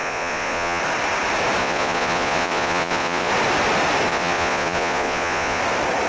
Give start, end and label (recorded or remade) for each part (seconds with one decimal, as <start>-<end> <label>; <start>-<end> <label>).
0.0-0.8 remade; 0.8-1.6 recorded; 1.6-3.3 remade; 3.3-4.1 recorded; 4.1-5.6 remade; 5.6-6.1 recorded